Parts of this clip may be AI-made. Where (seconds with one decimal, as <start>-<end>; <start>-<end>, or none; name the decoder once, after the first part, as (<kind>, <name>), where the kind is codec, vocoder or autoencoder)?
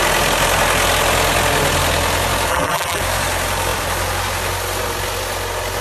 2.5-3.0 (vocoder, BigVGAN v2)